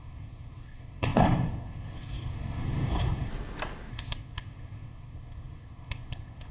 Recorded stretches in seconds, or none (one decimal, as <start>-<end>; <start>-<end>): 3.3-3.9